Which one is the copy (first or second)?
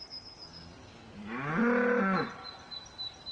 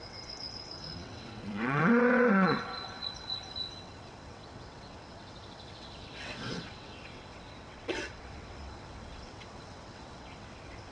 second